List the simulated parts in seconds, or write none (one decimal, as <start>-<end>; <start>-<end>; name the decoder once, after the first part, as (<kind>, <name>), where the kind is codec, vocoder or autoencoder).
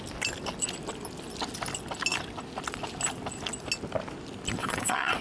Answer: 4.6-5.2 (vocoder, WaveNeXt)